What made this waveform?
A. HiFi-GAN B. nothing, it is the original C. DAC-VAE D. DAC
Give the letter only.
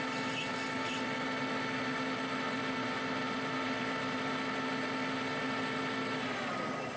B